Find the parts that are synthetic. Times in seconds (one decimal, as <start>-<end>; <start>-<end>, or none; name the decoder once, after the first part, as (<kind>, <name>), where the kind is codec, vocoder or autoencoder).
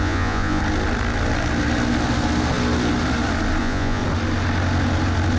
0.0-0.6 (vocoder, Vocos); 3.6-4.0